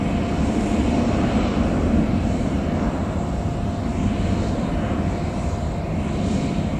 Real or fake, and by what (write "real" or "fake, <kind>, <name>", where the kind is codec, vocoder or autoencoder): real